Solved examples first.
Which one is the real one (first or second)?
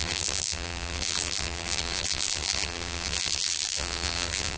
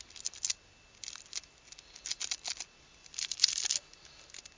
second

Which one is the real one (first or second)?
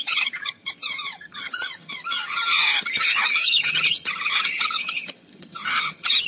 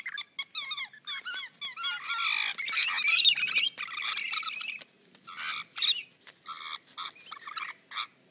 second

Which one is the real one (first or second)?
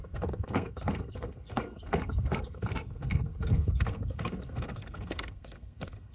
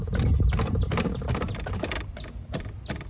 second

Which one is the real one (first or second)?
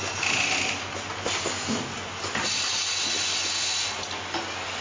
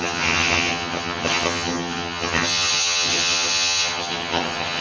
first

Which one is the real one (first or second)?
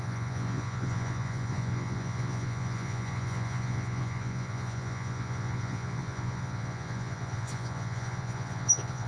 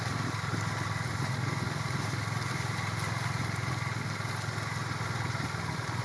second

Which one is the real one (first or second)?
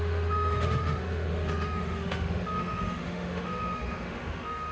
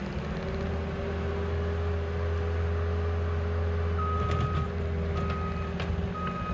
second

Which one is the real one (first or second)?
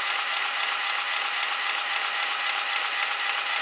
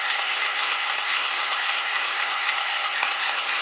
first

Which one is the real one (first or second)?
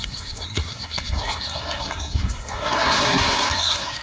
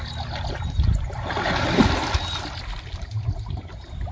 second